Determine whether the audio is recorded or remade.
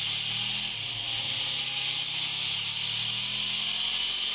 recorded